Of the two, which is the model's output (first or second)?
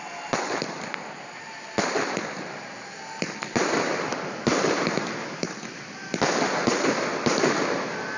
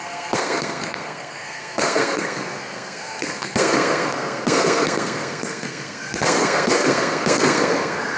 second